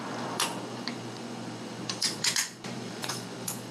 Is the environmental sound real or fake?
fake